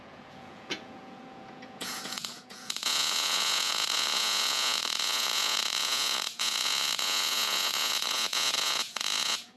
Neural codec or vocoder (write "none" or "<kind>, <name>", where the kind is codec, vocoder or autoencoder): vocoder, Vocos